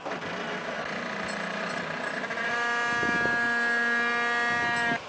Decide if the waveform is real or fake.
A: real